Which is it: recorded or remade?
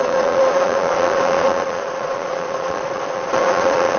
remade